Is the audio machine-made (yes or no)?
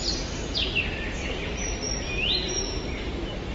yes